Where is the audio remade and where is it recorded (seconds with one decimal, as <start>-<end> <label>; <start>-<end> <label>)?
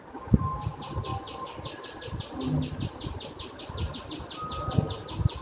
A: 0.0-5.4 recorded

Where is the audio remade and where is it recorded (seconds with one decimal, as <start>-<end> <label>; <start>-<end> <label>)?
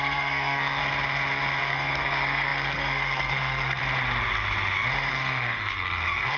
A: 0.0-0.8 remade; 0.8-1.6 recorded; 1.6-3.8 remade; 3.8-5.1 recorded; 5.1-6.4 remade